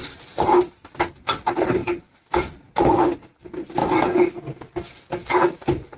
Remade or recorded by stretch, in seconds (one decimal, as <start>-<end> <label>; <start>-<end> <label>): 0.0-3.8 remade; 3.8-5.6 recorded; 5.6-6.0 remade